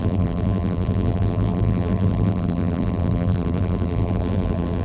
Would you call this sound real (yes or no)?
no